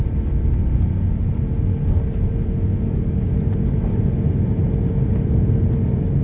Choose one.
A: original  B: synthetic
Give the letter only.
A